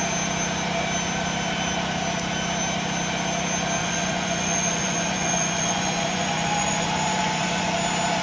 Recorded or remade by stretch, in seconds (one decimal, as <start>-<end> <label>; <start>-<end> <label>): 0.0-3.8 recorded; 3.8-7.7 remade; 7.7-8.2 recorded